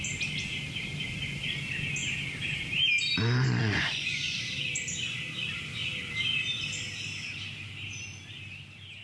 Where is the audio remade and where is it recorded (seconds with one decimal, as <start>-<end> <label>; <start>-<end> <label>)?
0.0-3.6 recorded; 3.6-4.4 remade; 4.4-9.0 recorded